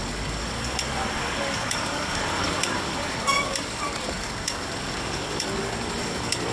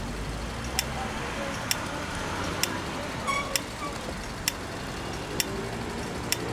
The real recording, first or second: second